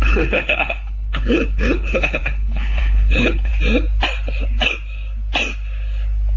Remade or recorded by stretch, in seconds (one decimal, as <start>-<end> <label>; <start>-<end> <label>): 0.0-3.5 remade; 3.5-6.4 recorded